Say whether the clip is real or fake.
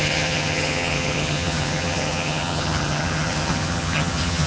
fake